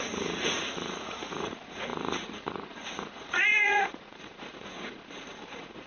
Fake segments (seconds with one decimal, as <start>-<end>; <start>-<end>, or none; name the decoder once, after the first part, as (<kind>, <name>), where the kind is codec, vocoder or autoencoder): 0.0-5.9 (vocoder, Vocos)